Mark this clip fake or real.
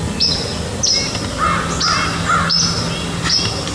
real